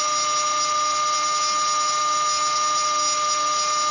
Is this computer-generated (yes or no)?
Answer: no